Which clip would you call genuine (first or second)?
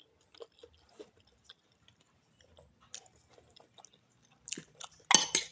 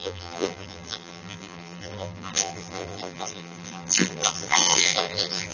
first